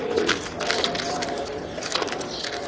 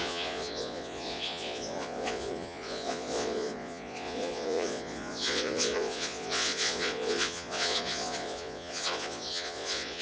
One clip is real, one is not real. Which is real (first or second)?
first